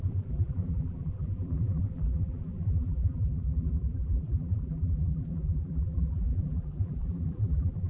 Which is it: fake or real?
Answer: fake